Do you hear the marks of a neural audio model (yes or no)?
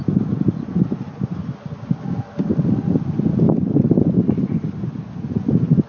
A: no